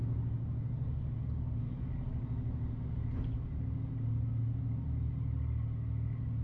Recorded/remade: recorded